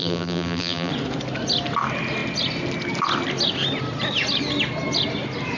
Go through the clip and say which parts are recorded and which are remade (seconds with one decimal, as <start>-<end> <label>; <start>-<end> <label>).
0.0-0.9 remade; 0.9-5.6 recorded